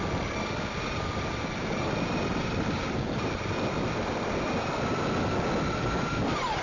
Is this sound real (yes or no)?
yes